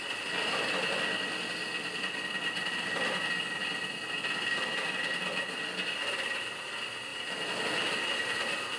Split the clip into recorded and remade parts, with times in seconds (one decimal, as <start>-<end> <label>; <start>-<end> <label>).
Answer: 0.0-8.8 recorded